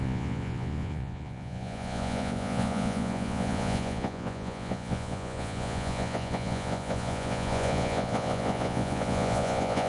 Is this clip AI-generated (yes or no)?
yes